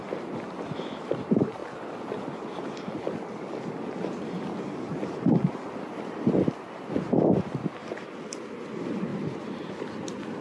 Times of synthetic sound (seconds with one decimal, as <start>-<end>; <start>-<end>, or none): 9.1-9.7